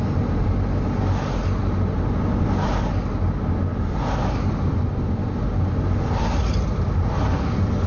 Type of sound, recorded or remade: recorded